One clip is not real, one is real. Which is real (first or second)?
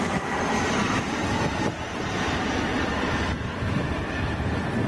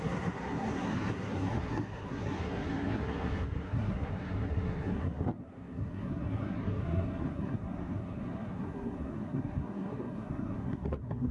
first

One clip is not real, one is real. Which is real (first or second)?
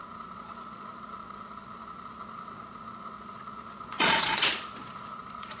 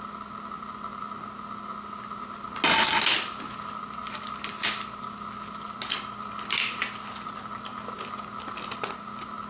second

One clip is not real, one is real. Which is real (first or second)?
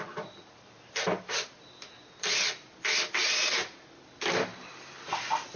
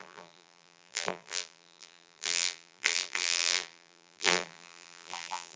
first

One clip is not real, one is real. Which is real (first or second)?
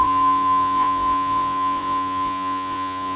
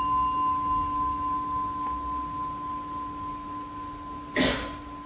second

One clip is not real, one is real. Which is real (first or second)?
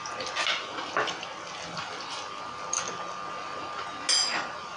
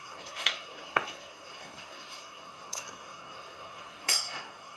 first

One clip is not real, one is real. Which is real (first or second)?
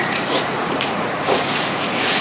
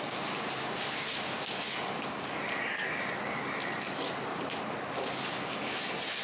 second